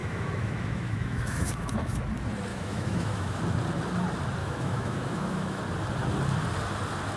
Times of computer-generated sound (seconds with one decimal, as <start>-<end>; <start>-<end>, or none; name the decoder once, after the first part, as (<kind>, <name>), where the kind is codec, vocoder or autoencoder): 0.0-2.0 (autoencoder, DAC-VAE); 2.5-3.4; 4.4-5.6